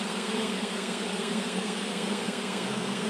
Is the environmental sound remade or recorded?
remade